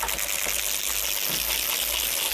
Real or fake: real